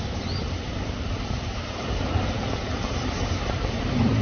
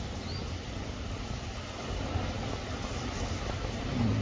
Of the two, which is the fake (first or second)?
first